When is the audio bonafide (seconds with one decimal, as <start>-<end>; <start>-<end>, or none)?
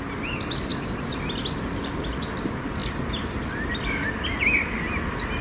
0.0-5.4